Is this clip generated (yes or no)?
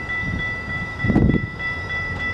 yes